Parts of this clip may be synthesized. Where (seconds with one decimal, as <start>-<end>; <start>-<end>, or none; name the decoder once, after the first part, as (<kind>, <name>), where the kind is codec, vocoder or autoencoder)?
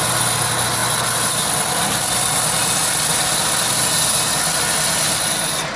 none